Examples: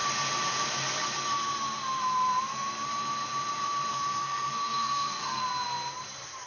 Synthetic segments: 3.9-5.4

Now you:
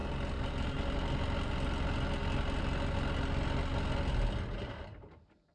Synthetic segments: none

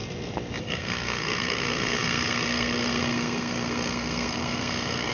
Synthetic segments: 0.6-5.1

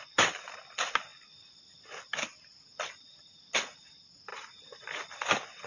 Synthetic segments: none

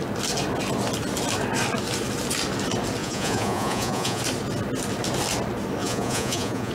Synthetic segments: 3.0-4.2; 5.8-6.7

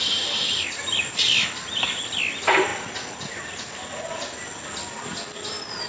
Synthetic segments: none

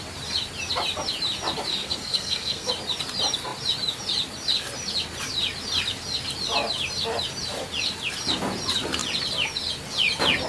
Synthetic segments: 1.7-2.7